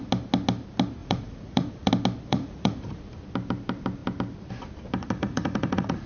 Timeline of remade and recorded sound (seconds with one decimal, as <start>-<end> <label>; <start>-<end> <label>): 0.0-1.0 recorded; 1.0-1.9 remade; 1.9-2.3 recorded; 2.3-3.0 remade; 3.0-5.0 recorded; 5.0-6.1 remade